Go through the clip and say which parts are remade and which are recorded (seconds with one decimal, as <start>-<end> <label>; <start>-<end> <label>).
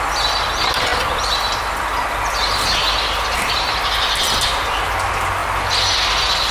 0.0-6.5 recorded